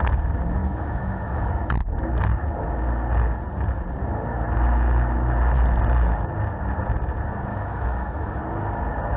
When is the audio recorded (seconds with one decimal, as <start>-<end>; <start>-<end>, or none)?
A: 0.0-0.6; 1.5-7.5; 8.4-9.2